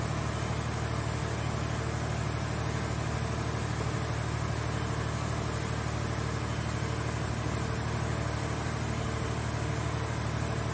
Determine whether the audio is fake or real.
real